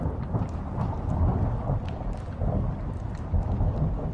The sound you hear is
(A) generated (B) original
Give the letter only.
B